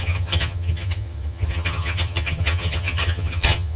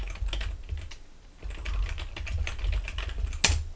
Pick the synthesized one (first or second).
first